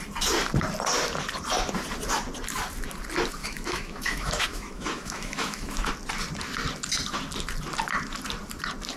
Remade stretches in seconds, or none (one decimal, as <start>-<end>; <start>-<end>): 3.4-5.9

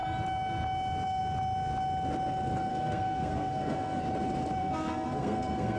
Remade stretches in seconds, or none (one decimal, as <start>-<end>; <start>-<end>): 2.7-4.0; 4.6-5.8